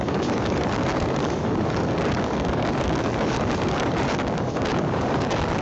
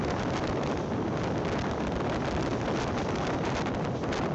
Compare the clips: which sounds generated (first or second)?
first